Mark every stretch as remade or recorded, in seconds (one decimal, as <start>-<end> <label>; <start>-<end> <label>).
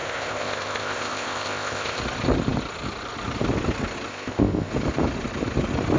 0.0-2.0 remade; 2.0-4.1 recorded; 4.1-4.7 remade; 4.7-6.0 recorded